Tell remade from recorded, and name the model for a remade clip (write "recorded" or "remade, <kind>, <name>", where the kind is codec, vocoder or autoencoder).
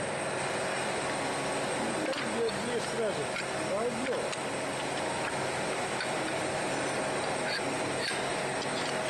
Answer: recorded